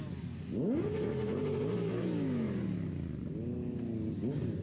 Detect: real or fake real